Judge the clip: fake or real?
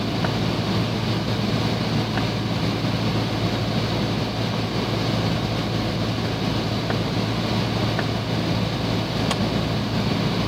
real